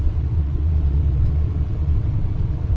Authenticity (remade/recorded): remade